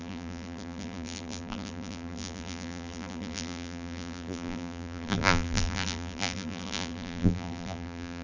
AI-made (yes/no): yes